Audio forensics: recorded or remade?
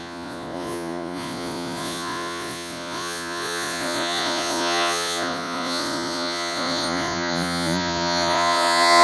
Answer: remade